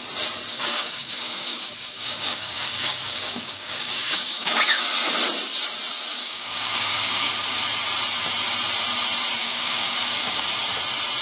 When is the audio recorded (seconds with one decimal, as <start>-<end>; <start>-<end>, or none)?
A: 0.0-0.5; 4.9-6.1; 7.3-9.4; 10.4-11.2